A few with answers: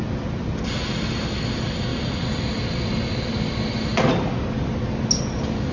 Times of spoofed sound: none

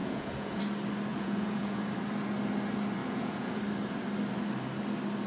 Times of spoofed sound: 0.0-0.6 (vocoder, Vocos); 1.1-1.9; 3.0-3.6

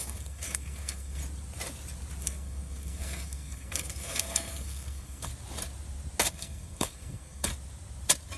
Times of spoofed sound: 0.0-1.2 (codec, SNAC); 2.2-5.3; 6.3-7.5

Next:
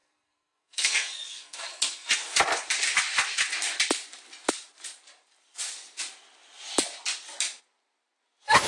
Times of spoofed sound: 0.0-2.1 (codec, SNAC)

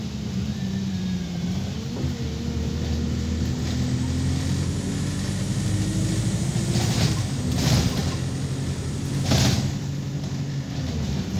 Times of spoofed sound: none

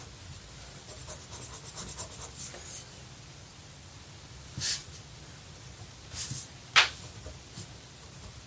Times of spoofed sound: none

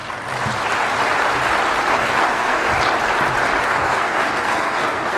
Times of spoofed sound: 1.9-2.7 (codec, SNAC); 3.6-5.2

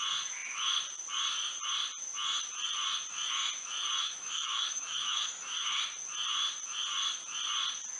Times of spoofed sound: 4.0-5.8 (autoencoder, DAC-VAE)